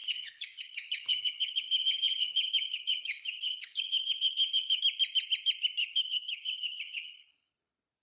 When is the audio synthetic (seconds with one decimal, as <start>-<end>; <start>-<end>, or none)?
0.0-4.8; 5.8-7.5